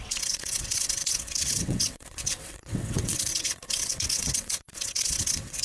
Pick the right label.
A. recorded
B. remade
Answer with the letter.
B